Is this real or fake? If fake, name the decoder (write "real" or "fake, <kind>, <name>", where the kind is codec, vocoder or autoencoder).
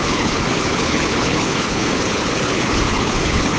fake, codec, HILCodec